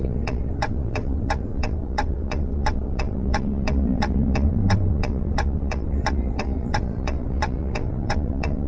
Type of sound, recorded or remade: remade